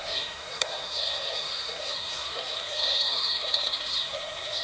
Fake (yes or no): yes